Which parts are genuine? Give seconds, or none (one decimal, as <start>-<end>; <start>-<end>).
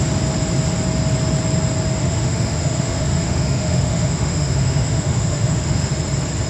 0.0-2.0; 5.9-6.5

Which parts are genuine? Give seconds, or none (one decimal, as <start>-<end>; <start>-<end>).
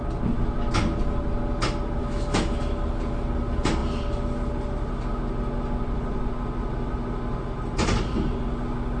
0.0-2.0; 2.6-9.0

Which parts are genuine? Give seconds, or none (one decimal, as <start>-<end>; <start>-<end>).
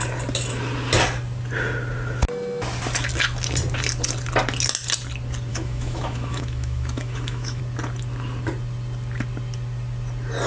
0.0-5.5; 7.6-10.5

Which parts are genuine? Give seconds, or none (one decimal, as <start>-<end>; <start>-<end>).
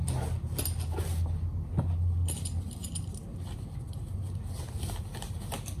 0.0-5.8